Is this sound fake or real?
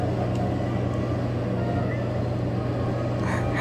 real